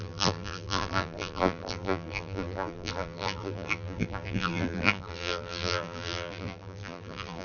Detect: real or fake fake